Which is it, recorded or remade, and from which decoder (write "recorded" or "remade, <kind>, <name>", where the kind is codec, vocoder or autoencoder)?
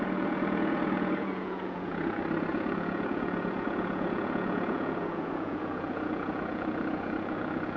remade, vocoder, Vocos